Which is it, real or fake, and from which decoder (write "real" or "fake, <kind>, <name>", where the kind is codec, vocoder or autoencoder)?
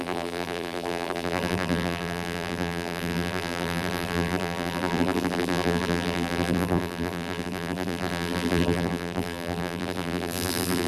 fake, vocoder, BigVGAN v2